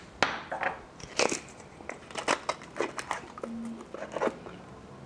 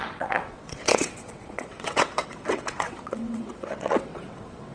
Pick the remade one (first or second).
second